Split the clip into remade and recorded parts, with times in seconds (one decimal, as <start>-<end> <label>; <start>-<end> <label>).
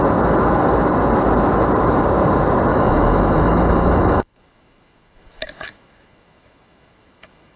0.0-2.7 recorded; 2.7-7.6 remade